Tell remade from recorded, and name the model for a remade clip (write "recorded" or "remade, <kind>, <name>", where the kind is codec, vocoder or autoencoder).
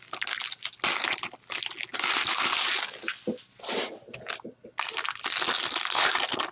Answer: recorded